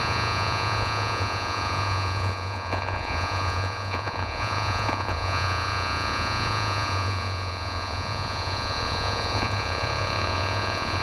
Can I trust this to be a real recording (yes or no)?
no